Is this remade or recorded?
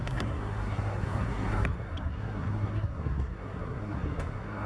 remade